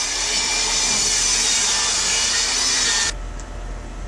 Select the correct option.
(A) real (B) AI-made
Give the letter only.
A